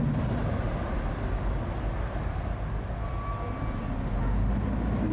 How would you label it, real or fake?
real